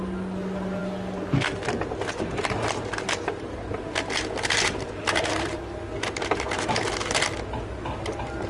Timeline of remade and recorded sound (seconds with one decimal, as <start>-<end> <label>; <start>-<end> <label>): 0.0-8.5 recorded

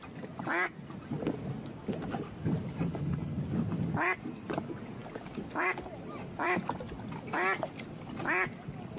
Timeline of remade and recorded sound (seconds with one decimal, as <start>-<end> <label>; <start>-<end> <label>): 0.0-2.9 recorded; 2.9-3.4 remade; 3.4-9.0 recorded

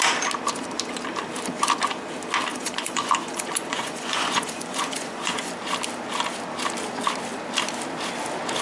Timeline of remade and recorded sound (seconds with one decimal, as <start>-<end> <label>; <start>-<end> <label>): 0.0-2.5 recorded; 2.5-5.5 remade; 5.5-8.6 recorded

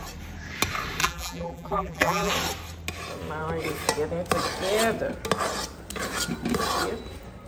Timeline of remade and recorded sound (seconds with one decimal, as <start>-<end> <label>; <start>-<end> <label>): 0.0-1.0 recorded; 1.0-2.3 remade; 2.3-7.5 recorded

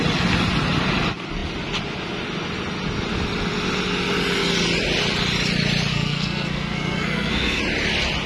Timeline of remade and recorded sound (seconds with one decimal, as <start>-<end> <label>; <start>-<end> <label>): 0.0-5.9 recorded; 5.9-7.6 remade; 7.6-8.3 recorded

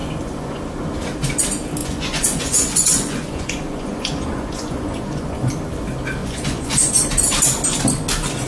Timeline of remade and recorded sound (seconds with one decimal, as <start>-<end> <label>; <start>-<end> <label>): 0.0-0.6 remade; 0.6-1.8 recorded; 1.8-5.5 remade; 5.5-6.2 recorded; 6.2-6.9 remade; 6.9-8.5 recorded

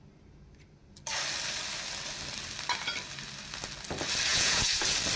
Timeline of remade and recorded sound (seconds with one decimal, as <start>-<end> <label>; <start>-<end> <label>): 0.0-4.3 recorded; 4.3-4.8 remade; 4.8-5.2 recorded

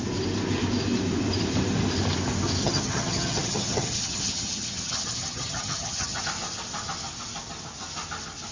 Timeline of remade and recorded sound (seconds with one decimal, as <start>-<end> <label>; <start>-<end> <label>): 0.0-2.6 recorded; 2.6-6.2 remade; 6.2-8.5 recorded